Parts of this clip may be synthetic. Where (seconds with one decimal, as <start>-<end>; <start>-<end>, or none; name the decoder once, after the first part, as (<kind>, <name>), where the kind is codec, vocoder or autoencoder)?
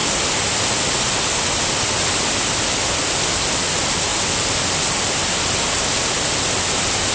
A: none